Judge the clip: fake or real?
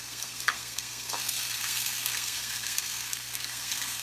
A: fake